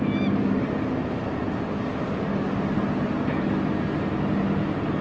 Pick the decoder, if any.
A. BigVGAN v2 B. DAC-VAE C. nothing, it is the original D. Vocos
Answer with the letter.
C